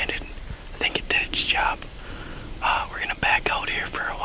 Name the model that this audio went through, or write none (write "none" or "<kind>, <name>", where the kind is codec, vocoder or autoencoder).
none